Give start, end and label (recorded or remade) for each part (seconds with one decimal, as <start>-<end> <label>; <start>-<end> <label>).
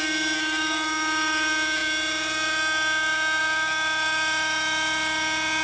0.0-5.6 recorded